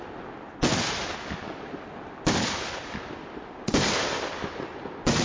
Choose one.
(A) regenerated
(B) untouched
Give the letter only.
B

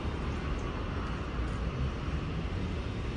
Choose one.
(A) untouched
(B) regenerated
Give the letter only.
A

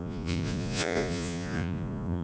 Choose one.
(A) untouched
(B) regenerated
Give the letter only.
B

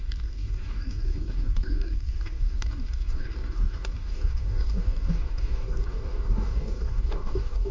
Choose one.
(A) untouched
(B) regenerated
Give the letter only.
B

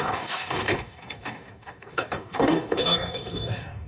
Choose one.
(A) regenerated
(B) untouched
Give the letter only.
A